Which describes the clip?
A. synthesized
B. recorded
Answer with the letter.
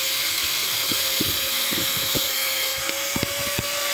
A